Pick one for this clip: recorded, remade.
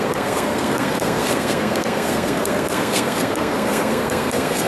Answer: remade